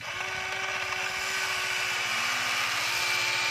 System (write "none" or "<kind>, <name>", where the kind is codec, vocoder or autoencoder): none